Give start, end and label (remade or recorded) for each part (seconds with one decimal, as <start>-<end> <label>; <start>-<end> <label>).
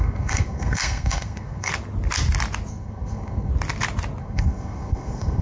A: 0.0-1.7 remade; 1.7-2.7 recorded; 2.7-3.5 remade; 3.5-4.2 recorded; 4.2-5.4 remade